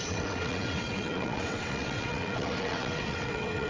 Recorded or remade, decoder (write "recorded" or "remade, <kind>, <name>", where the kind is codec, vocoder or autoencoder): remade, vocoder, WaveNeXt